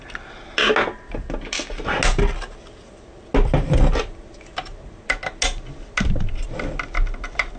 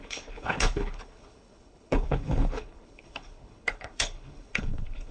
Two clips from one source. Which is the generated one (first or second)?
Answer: second